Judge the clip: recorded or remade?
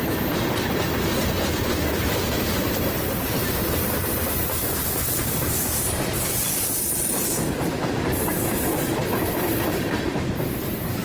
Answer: remade